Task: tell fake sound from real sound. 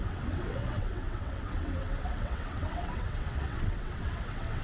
fake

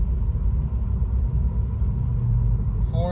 real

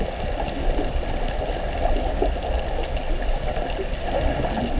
real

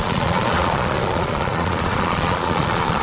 fake